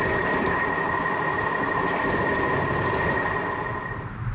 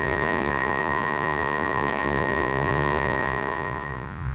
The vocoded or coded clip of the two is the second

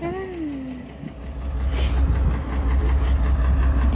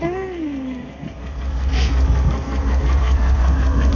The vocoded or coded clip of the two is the second